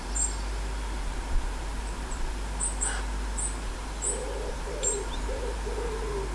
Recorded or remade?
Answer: remade